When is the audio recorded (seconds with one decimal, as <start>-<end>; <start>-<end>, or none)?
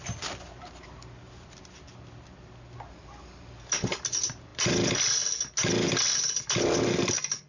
0.0-7.5